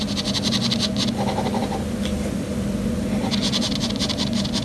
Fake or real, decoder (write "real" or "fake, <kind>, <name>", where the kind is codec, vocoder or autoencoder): real